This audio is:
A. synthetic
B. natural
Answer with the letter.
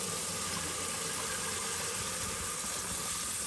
B